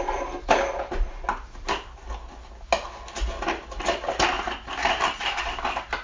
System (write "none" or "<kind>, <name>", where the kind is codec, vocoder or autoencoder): none